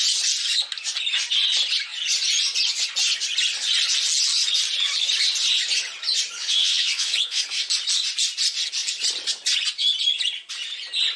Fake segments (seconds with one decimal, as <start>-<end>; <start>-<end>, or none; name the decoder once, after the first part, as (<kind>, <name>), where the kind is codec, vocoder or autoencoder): 6.4-7.4 (vocoder, WaveNeXt)